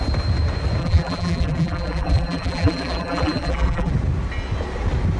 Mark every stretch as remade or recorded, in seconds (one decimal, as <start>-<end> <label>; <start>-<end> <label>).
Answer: 0.0-0.8 recorded; 0.8-3.9 remade; 3.9-5.2 recorded